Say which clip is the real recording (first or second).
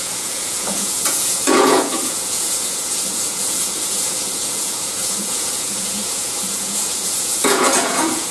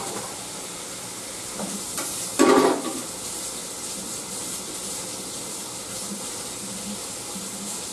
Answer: second